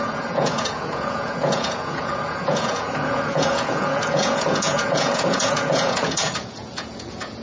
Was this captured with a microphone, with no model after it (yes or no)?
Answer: no